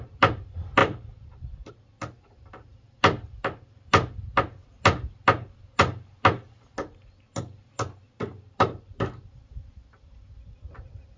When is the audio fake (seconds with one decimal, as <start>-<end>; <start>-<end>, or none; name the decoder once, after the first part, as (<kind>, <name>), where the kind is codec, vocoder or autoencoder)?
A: 0.8-1.7 (vocoder, BigVGAN v2)